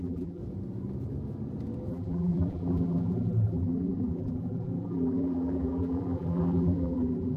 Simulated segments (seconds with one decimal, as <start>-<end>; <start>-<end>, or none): 0.0-0.4; 1.9-7.4